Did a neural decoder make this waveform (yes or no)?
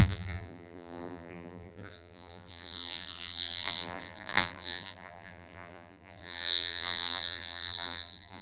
yes